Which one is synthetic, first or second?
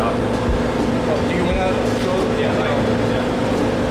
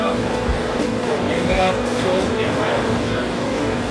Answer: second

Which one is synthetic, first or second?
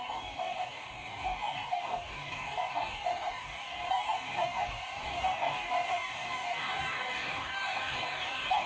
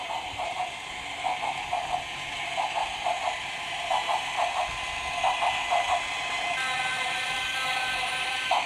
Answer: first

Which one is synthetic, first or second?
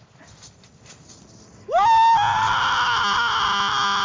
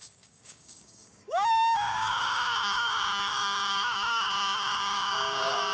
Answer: second